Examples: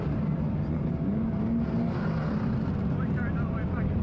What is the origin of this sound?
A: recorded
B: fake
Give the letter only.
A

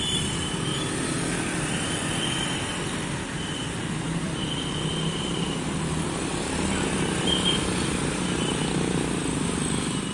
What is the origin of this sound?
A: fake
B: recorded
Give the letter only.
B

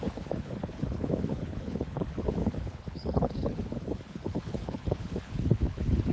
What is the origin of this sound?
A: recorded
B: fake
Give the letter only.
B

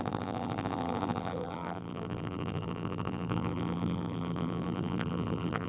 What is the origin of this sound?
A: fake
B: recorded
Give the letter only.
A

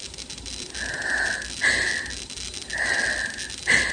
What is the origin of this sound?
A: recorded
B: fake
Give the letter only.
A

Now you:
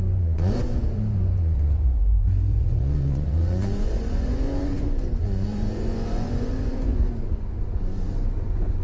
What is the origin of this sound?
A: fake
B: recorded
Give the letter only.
A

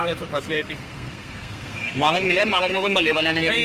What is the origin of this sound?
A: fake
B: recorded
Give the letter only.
A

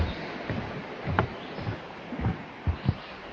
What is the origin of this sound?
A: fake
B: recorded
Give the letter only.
B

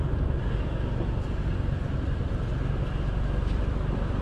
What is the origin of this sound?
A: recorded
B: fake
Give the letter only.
A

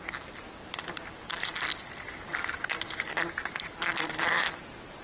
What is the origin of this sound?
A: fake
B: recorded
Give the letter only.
B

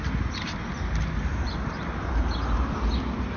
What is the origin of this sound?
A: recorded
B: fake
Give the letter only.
A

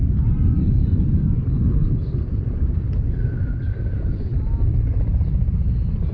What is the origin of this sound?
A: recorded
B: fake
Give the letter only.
B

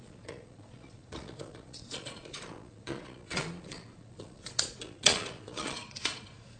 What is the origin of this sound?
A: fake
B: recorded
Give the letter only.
A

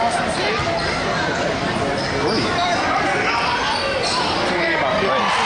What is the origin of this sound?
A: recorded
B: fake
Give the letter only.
A